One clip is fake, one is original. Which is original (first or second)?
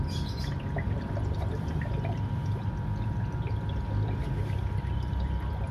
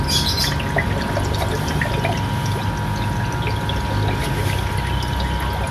second